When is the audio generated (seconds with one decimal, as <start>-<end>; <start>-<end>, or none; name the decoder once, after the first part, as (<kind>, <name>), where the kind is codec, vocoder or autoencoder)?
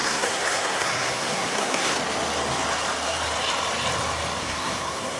0.0-2.0 (codec, SNAC); 4.4-5.2